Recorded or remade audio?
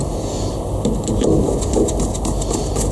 recorded